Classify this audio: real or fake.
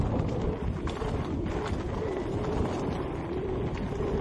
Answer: real